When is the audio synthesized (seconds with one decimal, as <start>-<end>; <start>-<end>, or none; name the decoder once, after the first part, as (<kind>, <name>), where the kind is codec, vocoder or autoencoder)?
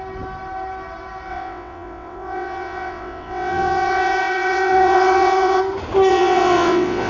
1.3-5.6 (vocoder, WaveNeXt); 6.1-7.1